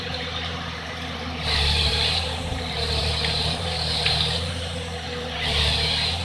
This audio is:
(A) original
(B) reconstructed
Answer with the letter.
B